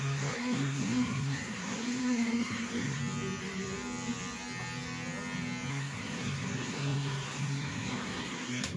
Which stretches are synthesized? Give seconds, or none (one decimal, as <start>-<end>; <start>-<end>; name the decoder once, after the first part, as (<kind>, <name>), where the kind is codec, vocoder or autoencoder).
0.0-3.0 (codec, SNAC); 5.7-8.8